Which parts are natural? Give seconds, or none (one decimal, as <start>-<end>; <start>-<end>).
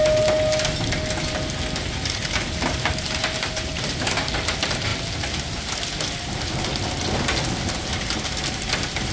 0.0-9.1